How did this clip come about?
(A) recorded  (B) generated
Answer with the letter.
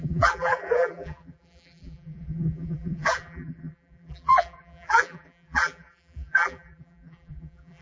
B